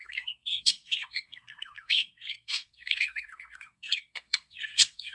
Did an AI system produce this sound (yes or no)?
yes